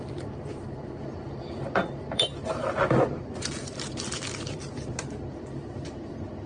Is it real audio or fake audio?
fake